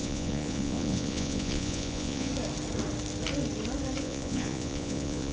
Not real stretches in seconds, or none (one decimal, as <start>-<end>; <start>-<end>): 0.0-2.3; 4.0-5.3